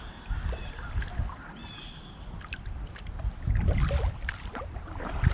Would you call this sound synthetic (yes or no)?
no